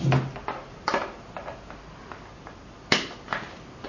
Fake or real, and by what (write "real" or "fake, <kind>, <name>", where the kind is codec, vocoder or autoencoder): real